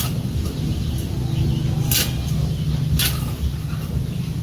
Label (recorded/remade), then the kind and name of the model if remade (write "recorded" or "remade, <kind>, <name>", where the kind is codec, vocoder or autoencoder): recorded